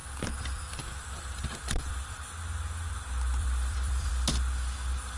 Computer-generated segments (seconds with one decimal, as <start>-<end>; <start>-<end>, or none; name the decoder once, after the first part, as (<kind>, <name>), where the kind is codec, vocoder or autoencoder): 0.0-2.3 (vocoder, BigVGAN v2); 3.4-4.1